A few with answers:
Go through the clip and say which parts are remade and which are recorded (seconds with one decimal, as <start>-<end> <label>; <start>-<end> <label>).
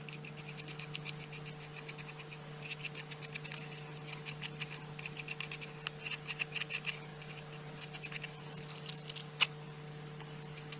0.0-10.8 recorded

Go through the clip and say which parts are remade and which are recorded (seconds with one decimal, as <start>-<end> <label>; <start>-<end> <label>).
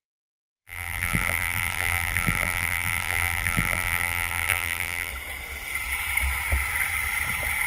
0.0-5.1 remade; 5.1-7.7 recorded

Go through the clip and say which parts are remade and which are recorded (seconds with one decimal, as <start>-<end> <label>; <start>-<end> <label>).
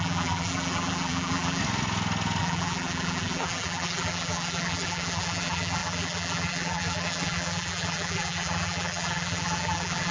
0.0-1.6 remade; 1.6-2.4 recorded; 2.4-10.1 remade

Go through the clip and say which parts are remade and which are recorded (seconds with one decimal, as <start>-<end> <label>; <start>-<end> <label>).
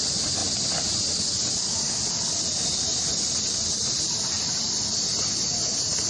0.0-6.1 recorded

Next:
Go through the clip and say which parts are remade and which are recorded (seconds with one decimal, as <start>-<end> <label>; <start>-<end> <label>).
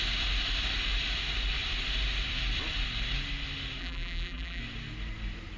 0.0-3.8 recorded; 3.8-4.6 remade; 4.6-5.6 recorded